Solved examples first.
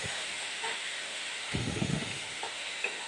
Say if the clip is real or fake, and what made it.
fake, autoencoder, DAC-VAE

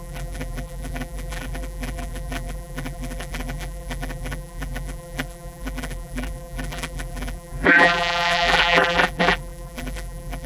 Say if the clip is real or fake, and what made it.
fake, vocoder, BigVGAN v2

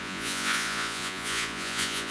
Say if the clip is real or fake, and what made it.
fake, vocoder, Vocos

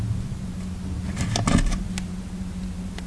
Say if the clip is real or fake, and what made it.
real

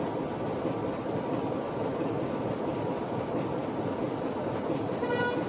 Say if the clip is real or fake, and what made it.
real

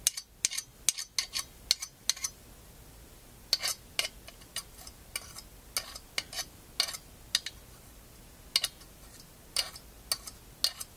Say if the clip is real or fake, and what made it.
real